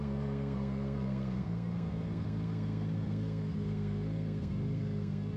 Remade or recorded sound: remade